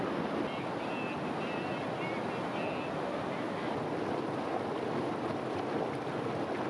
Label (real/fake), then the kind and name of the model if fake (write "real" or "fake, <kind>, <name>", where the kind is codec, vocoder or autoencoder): real